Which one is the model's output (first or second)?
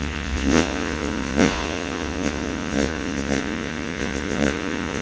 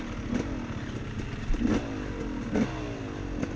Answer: first